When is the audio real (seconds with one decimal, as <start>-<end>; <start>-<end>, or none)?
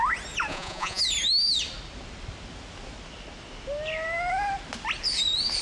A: 0.0-0.5; 1.0-5.6